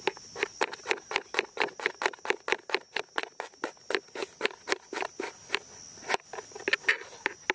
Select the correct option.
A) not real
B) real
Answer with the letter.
B